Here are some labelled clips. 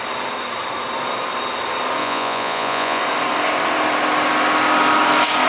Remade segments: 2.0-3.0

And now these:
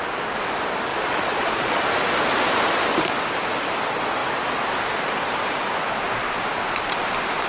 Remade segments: 0.9-1.8

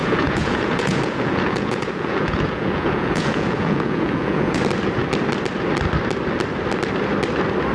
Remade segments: 0.0-4.6

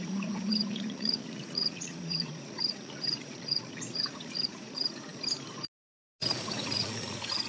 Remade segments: 0.0-5.1; 6.2-7.5

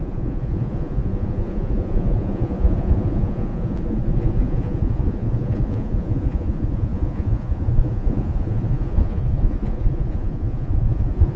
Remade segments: 0.0-11.4

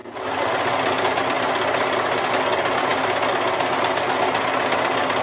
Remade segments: none

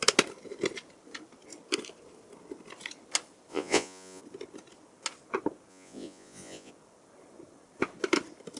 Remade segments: 3.5-4.2; 5.7-6.7

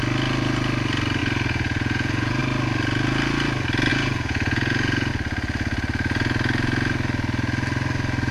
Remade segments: 1.2-2.4; 3.9-5.1